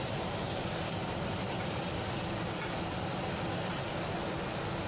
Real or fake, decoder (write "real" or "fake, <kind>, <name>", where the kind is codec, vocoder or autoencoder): real